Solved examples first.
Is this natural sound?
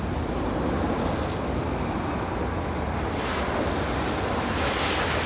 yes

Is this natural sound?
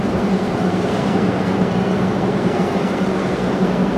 no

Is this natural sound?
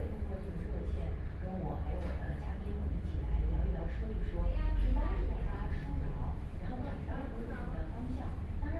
yes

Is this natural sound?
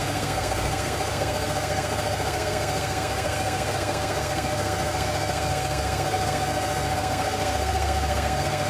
no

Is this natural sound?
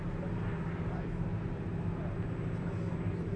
yes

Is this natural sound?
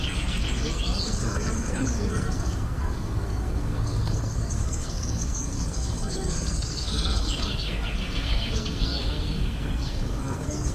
no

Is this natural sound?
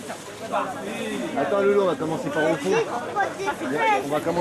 yes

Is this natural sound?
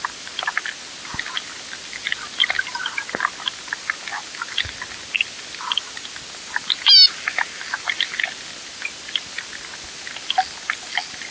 yes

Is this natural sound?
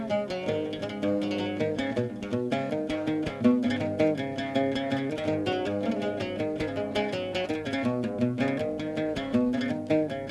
yes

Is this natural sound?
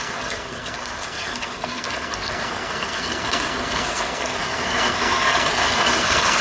no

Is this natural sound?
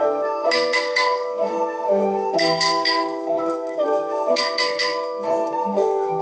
no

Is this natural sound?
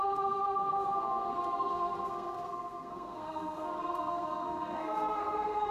no